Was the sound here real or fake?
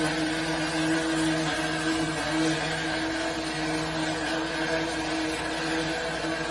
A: real